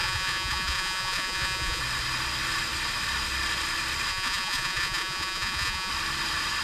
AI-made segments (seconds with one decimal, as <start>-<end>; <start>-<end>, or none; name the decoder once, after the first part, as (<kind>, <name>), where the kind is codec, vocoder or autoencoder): 0.0-1.8 (vocoder, Vocos); 4.1-5.9